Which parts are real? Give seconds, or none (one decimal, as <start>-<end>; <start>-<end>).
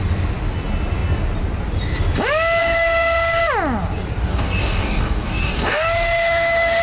0.0-2.6; 3.4-4.3